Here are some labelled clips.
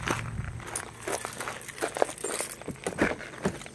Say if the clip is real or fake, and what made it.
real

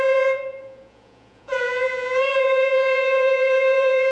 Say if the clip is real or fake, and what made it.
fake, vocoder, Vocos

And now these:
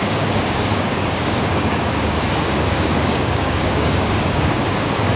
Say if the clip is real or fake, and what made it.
fake, codec, DAC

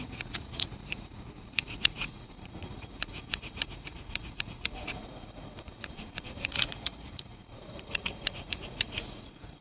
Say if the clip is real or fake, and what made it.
fake, vocoder, Vocos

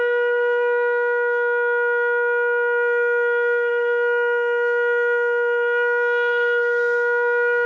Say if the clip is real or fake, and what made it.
fake, autoencoder, DAC-VAE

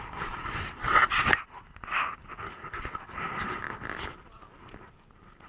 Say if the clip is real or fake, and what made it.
real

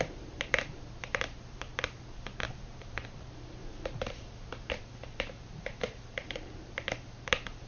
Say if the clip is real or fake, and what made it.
fake, vocoder, BigVGAN v2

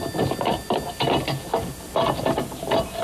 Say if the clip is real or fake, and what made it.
real